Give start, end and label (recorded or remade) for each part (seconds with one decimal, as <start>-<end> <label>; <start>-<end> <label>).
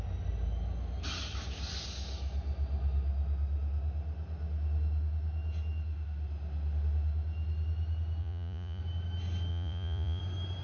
0.0-8.2 recorded; 8.2-8.8 remade; 8.8-9.5 recorded; 9.5-10.2 remade; 10.2-10.6 recorded